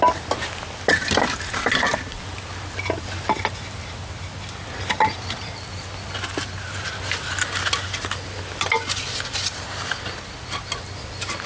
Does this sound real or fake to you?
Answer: real